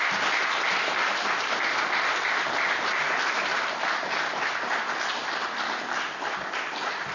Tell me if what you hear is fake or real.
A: real